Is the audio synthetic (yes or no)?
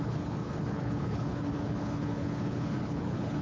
yes